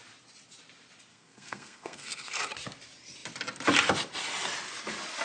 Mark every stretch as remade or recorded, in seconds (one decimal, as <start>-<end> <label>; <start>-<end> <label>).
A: 0.0-1.1 recorded; 1.1-2.5 remade; 2.5-5.2 recorded